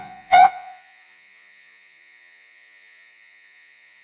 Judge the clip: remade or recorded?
remade